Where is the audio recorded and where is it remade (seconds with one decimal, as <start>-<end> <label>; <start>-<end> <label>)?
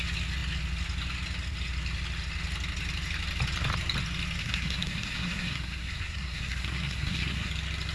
0.0-4.4 recorded; 4.4-7.5 remade; 7.5-7.9 recorded